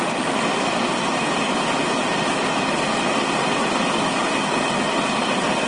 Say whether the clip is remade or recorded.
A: recorded